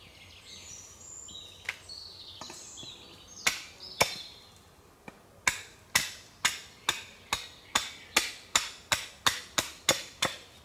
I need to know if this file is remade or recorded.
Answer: recorded